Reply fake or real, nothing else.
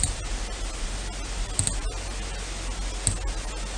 real